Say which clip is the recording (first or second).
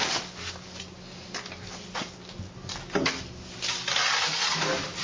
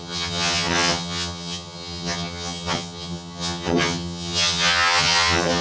first